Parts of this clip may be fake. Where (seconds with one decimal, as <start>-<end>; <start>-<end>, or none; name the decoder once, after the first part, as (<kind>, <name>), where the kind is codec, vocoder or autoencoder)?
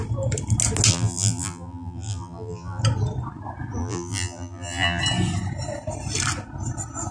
0.9-2.8 (vocoder, BigVGAN v2); 3.8-5.0